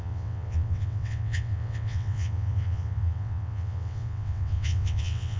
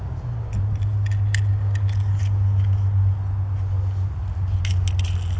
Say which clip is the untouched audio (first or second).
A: second